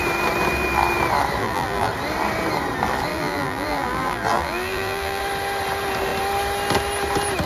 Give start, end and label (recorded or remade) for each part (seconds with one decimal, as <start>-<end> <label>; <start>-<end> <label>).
0.0-1.4 recorded; 1.4-1.9 remade; 1.9-3.1 recorded; 3.1-5.2 remade; 5.2-7.5 recorded